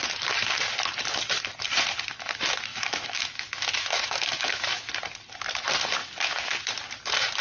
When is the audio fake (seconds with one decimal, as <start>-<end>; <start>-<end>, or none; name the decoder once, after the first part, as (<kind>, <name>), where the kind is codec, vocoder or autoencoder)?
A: 2.7-4.9 (autoencoder, DAC-VAE); 6.0-6.6